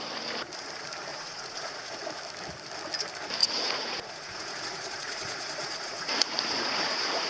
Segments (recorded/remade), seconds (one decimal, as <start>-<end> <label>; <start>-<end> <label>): 0.0-1.1 recorded; 1.1-2.0 remade; 2.0-3.4 recorded; 3.4-7.3 remade